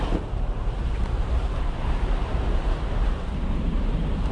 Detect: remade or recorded remade